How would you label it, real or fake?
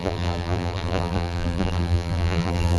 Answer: fake